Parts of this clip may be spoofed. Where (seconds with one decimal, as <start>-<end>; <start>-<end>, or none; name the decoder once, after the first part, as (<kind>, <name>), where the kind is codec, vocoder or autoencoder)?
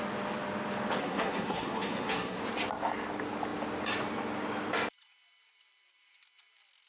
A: 1.0-2.4 (codec, SNAC)